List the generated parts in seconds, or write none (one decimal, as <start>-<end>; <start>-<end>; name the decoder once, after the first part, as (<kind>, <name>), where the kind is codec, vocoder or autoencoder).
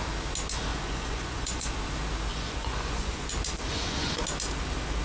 0.7-1.7 (vocoder, Vocos); 2.3-3.3; 3.7-4.2